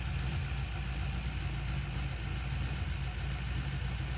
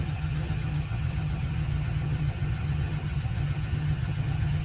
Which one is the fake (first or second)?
second